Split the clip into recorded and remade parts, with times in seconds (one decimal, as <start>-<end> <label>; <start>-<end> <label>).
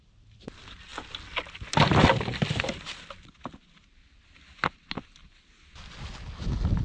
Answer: 0.0-6.8 recorded